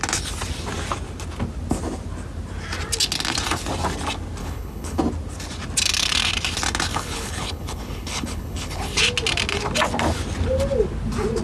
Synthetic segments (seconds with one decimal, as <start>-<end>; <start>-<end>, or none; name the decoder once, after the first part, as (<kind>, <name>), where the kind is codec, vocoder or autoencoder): 4.4-5.0 (codec, HILCodec); 6.9-9.0